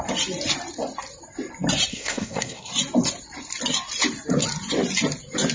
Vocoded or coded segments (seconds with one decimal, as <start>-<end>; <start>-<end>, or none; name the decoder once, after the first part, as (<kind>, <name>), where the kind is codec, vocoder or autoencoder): 1.9-2.7 (codec, SNAC)